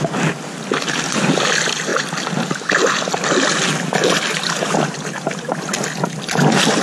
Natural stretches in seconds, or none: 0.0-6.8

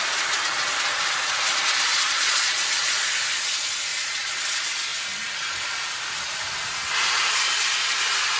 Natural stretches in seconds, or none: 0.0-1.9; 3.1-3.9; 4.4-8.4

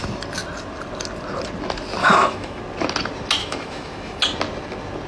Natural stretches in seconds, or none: 0.0-2.0; 2.6-3.4; 4.2-5.1

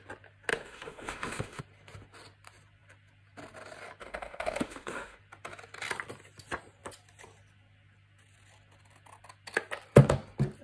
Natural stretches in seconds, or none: 0.0-0.5; 1.6-4.0; 5.2-10.6